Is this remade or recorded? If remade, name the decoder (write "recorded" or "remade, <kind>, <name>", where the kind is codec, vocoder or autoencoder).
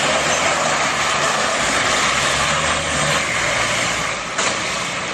recorded